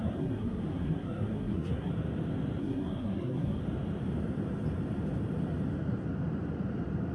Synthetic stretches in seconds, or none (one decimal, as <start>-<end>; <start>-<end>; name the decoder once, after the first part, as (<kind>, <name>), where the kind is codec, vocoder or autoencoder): 0.0-1.9 (codec, SNAC); 2.6-3.6